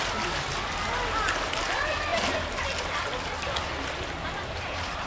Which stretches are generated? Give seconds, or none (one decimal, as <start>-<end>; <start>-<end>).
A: none